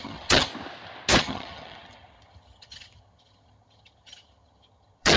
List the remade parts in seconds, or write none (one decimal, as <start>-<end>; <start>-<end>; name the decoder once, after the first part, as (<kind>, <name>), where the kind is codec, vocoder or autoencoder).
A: 0.0-0.5 (vocoder, HiFi-GAN); 1.2-5.2